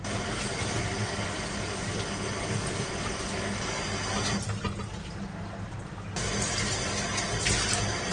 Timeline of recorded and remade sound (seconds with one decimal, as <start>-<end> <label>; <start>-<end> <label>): 0.0-8.1 recorded